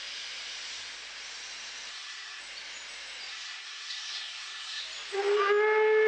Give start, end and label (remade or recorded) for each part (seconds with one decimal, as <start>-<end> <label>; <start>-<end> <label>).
0.0-1.9 recorded; 1.9-2.4 remade; 2.4-3.3 recorded; 3.3-4.8 remade; 4.8-6.1 recorded